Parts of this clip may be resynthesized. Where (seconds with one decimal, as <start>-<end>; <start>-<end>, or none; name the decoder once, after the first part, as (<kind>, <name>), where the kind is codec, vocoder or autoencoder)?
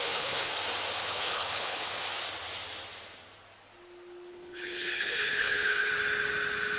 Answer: 0.0-0.5 (codec, HILCodec); 1.0-2.0; 4.3-5.9